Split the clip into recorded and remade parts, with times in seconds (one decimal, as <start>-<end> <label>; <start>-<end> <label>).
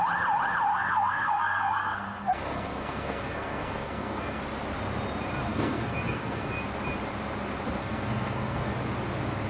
0.0-0.7 recorded; 0.7-4.4 remade; 4.4-5.5 recorded; 5.5-6.5 remade; 6.5-7.8 recorded; 7.8-8.7 remade; 8.7-9.5 recorded